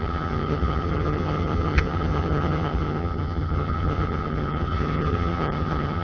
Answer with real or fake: fake